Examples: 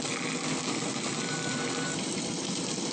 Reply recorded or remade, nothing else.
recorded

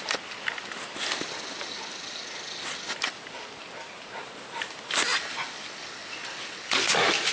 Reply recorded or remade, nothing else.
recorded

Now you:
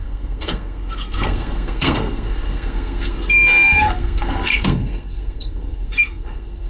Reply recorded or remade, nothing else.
remade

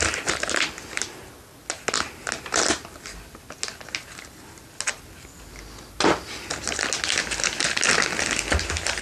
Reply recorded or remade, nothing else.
recorded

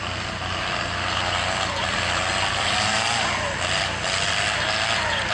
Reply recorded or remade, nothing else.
recorded